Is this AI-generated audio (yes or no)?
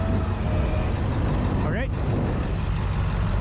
no